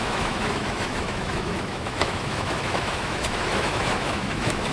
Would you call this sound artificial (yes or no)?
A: yes